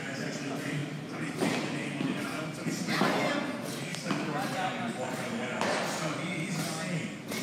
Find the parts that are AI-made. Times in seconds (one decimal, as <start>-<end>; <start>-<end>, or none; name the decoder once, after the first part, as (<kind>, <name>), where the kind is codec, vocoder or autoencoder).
none